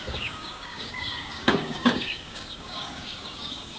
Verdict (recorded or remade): remade